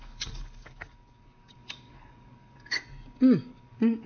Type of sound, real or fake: fake